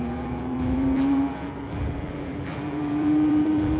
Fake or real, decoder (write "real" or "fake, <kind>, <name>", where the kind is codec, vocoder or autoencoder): fake, vocoder, BigVGAN v2